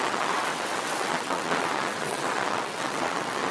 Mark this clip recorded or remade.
remade